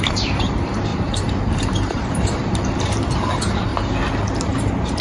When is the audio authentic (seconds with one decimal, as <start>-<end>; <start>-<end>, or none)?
3.7-4.4